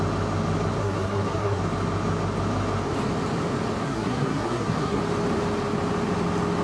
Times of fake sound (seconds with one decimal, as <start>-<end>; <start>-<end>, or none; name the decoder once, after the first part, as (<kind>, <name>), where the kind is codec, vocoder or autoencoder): 0.8-1.6 (codec, SNAC); 3.8-5.0